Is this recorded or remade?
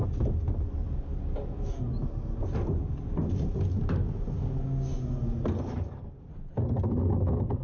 recorded